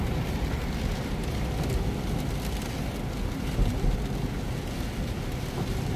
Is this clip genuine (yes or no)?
yes